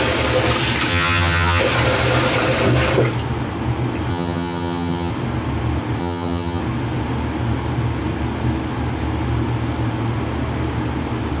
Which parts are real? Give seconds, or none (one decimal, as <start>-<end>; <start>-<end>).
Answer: 0.0-0.9; 1.6-4.1; 5.1-6.0; 6.6-11.4

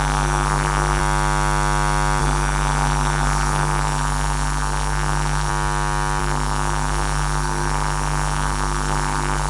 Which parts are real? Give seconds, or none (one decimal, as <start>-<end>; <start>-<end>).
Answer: 1.0-2.2; 5.5-6.2

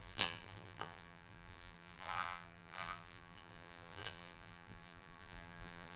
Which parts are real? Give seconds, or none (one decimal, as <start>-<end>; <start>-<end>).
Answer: none

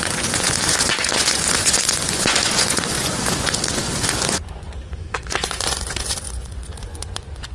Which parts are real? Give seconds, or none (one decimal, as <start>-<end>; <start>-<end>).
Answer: none

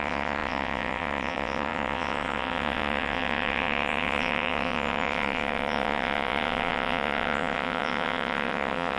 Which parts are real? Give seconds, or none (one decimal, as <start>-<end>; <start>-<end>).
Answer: none

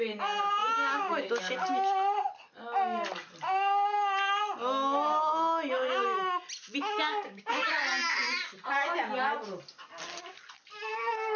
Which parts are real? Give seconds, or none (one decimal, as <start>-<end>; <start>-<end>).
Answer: 0.0-0.6; 1.4-7.1; 7.7-11.4